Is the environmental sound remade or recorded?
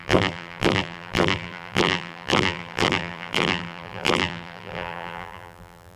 remade